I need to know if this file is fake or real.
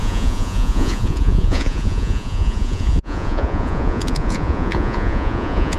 fake